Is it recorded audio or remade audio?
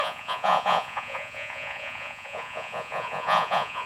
remade